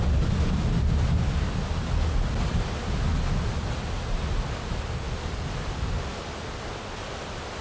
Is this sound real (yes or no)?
yes